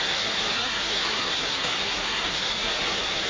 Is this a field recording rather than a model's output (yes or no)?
no